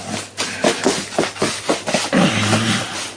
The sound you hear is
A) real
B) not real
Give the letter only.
A